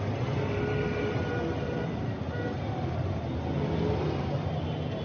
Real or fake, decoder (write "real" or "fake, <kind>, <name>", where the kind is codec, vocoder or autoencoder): real